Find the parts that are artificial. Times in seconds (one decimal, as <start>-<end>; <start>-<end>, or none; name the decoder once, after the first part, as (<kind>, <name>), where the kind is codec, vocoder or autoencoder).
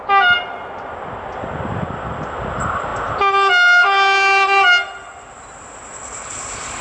none